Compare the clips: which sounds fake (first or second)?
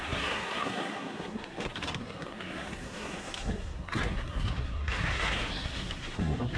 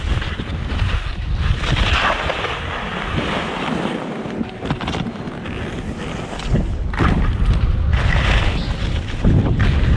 first